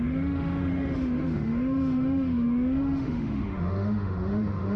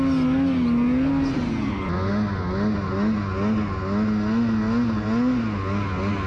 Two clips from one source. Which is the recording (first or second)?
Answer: second